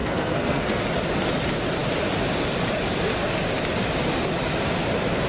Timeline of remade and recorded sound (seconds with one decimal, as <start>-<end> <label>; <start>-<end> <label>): 0.0-0.8 remade; 0.8-5.3 recorded